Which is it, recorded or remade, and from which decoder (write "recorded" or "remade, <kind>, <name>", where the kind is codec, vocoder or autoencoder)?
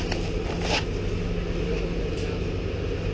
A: recorded